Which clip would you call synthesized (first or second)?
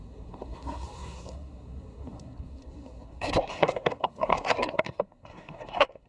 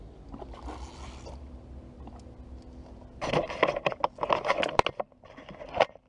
first